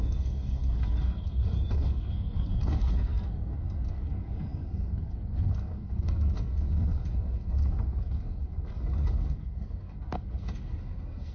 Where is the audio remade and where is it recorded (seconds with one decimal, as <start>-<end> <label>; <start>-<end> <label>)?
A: 0.0-11.3 remade